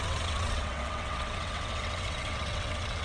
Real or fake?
fake